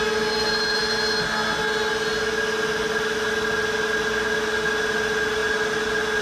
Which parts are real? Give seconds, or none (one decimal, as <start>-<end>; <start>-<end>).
0.0-6.2